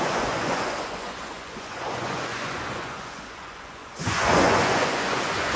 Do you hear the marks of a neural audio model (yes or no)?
yes